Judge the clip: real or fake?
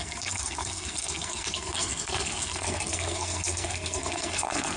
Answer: fake